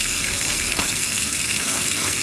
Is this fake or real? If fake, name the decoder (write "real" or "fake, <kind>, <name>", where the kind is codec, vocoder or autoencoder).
fake, codec, SNAC